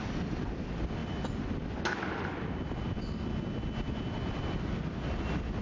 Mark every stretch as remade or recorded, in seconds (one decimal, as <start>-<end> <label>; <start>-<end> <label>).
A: 0.0-5.6 recorded

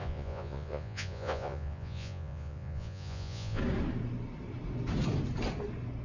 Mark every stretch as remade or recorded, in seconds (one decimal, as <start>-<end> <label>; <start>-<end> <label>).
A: 0.0-3.6 remade; 3.6-6.0 recorded

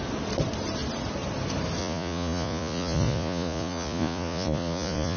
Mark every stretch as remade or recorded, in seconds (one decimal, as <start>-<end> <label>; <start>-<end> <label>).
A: 0.0-1.8 recorded; 1.8-5.2 remade

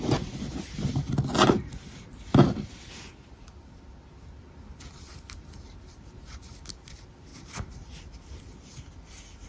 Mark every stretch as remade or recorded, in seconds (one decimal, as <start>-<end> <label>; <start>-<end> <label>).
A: 0.0-9.5 recorded

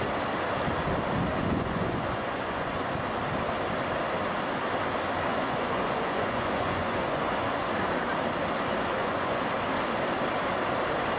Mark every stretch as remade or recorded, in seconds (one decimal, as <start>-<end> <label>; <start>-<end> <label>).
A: 0.0-1.3 recorded; 1.3-2.9 remade; 2.9-5.3 recorded; 5.3-7.7 remade; 7.7-9.0 recorded; 9.0-9.5 remade; 9.5-11.2 recorded